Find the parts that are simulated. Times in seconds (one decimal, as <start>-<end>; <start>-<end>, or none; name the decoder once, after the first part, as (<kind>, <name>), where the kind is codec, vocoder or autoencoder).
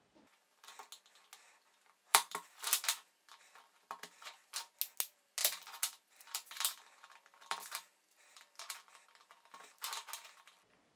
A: 2.1-4.3 (vocoder, BigVGAN v2); 5.4-8.9